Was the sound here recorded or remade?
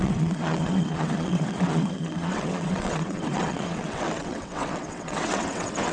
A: remade